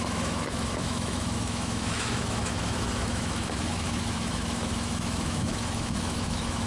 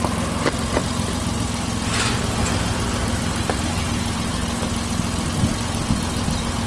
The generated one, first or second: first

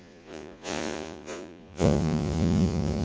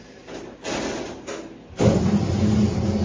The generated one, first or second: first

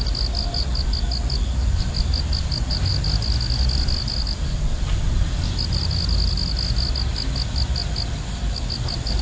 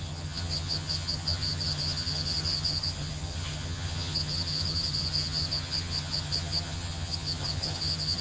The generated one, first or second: second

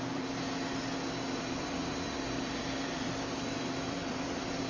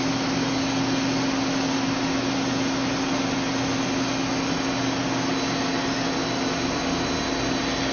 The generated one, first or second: first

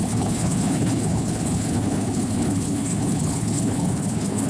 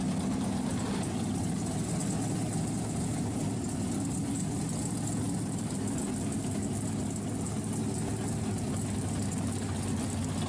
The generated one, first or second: first